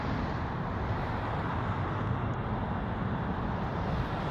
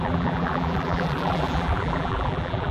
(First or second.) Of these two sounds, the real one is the first